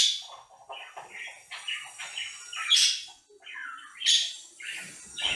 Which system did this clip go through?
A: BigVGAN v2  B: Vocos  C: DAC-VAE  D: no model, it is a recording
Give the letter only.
D